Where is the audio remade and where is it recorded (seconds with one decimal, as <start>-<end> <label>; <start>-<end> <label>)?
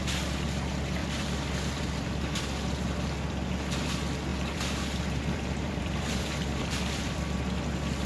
0.0-1.0 recorded; 1.0-2.4 remade; 2.4-4.3 recorded; 4.3-7.2 remade; 7.2-8.1 recorded